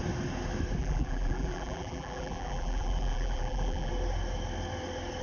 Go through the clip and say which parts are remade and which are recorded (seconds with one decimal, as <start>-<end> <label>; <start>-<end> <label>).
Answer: 0.0-0.8 recorded; 0.8-3.9 remade; 3.9-5.2 recorded